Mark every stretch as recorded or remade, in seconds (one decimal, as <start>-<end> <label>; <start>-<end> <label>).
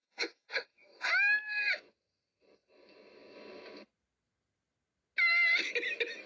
0.0-1.1 remade; 1.1-6.3 recorded